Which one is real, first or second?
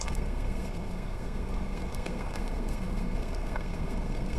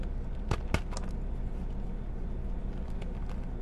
second